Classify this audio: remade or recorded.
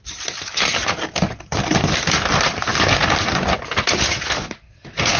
recorded